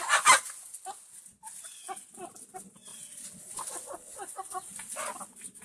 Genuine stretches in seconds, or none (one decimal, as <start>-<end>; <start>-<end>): 0.0-5.6